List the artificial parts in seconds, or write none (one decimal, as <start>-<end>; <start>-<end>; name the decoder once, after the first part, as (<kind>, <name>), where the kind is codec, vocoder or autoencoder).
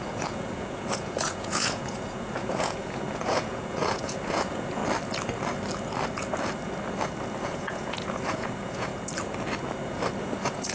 0.0-4.8 (vocoder, Vocos); 7.4-8.9; 10.2-10.7